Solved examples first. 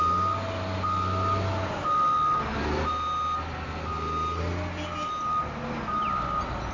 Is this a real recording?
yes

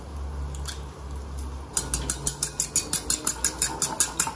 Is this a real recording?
yes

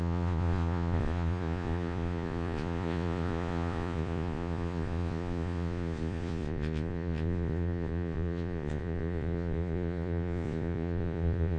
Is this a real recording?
no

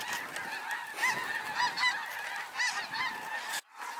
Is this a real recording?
yes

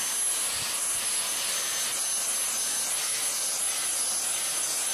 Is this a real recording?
yes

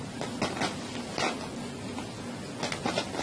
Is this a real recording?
yes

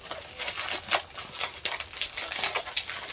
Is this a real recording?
yes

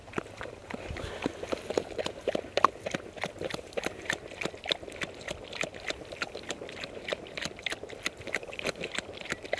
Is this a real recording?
yes